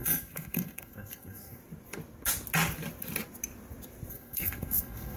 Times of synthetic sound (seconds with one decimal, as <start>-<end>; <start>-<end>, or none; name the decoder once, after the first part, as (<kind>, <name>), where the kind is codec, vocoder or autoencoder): 0.0-1.6 (codec, SNAC); 4.1-5.2